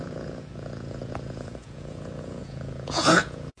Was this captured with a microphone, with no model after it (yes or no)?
no